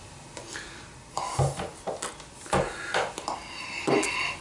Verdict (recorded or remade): recorded